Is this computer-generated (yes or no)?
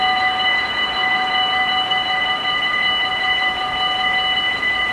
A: yes